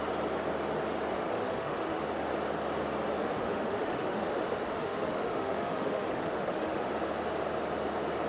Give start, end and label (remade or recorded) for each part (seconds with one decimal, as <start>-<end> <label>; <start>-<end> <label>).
0.0-1.1 recorded; 1.1-2.0 remade; 2.0-3.2 recorded; 3.2-6.9 remade; 6.9-8.3 recorded

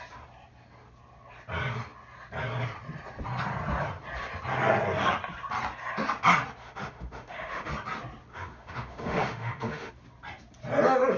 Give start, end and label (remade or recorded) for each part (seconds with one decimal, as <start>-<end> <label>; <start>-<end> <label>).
0.0-6.6 recorded; 6.6-7.7 remade; 7.7-8.3 recorded; 8.3-9.9 remade; 9.9-11.2 recorded

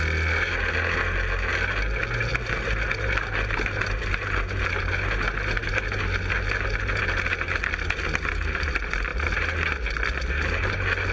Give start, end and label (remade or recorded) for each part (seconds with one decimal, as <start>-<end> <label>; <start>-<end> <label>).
0.0-11.1 recorded

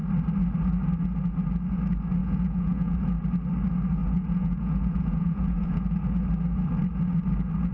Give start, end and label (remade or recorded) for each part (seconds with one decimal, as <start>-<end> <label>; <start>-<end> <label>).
0.0-2.2 recorded; 2.2-3.0 remade; 3.0-4.0 recorded; 4.0-5.8 remade; 5.8-7.7 recorded

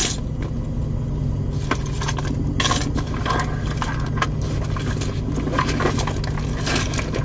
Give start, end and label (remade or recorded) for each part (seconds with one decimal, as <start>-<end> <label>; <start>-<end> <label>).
0.0-7.2 recorded